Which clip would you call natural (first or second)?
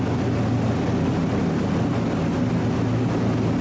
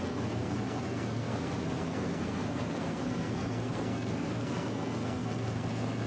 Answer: first